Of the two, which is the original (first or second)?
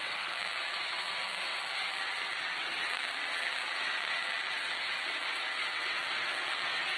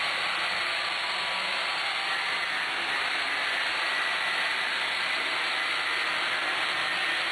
second